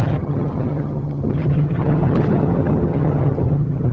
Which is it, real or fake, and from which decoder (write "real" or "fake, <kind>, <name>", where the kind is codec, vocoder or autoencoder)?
fake, vocoder, HiFi-GAN